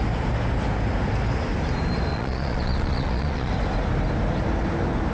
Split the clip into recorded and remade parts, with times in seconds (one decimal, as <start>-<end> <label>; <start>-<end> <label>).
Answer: 0.0-2.1 recorded; 2.1-3.5 remade; 3.5-5.1 recorded